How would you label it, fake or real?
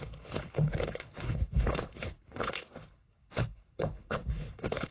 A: fake